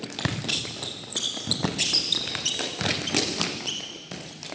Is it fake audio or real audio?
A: real